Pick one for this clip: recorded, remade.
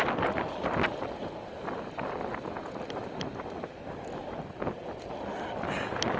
recorded